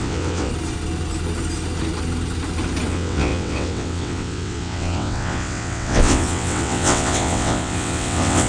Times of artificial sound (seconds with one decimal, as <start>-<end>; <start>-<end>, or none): 0.0-0.5; 2.9-8.5

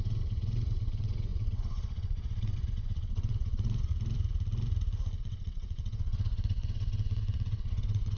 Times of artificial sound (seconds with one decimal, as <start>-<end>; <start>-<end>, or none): 0.0-3.9; 5.2-8.2

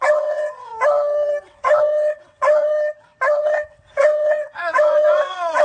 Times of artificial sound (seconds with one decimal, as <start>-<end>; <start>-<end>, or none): 0.0-0.7; 1.4-2.7; 3.4-5.6